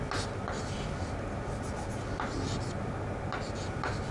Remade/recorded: recorded